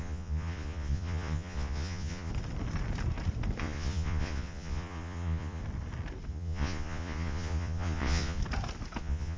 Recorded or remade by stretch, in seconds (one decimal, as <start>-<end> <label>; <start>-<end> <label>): 0.0-2.3 remade; 2.3-3.6 recorded; 3.6-5.6 remade; 5.6-6.3 recorded; 6.3-8.4 remade; 8.4-9.0 recorded; 9.0-9.4 remade